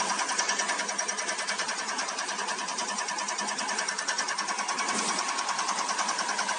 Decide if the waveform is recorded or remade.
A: recorded